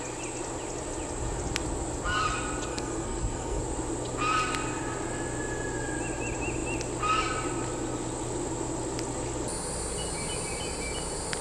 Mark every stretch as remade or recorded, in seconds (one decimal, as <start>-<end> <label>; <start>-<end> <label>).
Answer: 0.0-2.7 recorded; 2.7-3.6 remade; 3.6-11.4 recorded